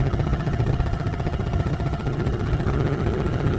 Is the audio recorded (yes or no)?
no